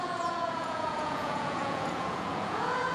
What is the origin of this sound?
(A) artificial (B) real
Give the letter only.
A